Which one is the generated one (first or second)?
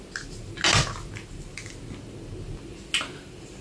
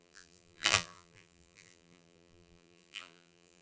second